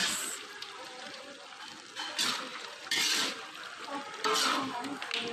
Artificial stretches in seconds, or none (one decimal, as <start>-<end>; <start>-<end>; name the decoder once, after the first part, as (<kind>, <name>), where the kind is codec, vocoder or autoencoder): 0.0-1.2 (vocoder, BigVGAN v2); 2.5-3.4